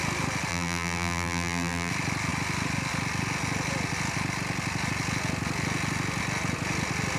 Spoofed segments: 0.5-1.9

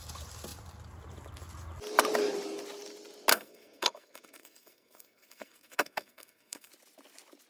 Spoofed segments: 3.3-6.7

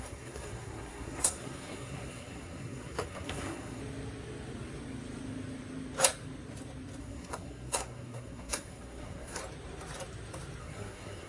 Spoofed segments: 0.0-3.8; 7.0-9.4; 10.6-11.3

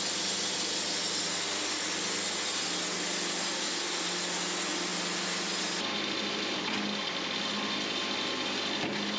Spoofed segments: none

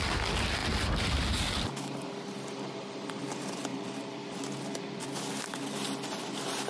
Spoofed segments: none